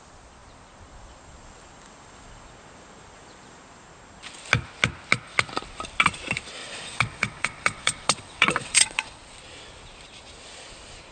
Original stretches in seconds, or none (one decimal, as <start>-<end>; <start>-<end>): 0.0-6.6; 9.2-11.1